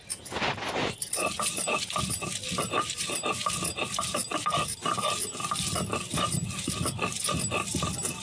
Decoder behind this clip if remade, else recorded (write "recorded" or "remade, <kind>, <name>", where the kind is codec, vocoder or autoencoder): recorded